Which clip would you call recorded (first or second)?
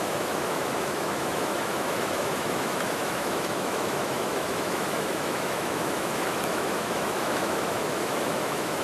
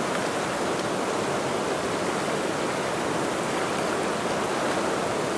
second